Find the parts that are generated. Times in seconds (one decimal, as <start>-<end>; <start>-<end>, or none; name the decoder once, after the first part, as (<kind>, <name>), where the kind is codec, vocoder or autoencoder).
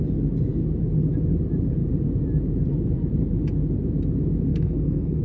4.5-5.2 (codec, SNAC)